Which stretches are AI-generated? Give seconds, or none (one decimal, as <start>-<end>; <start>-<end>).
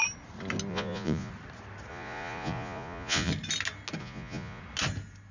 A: 0.7-1.3; 1.9-3.3; 4.0-4.6